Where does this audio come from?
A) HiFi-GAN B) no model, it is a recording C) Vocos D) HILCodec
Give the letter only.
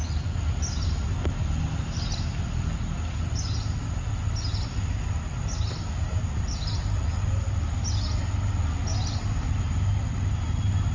B